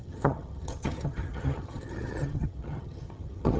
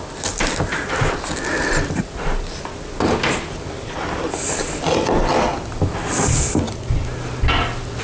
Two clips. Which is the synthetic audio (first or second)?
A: first